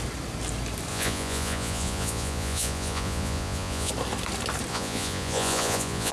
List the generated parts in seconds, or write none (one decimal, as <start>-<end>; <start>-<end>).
0.9-3.9; 4.7-6.1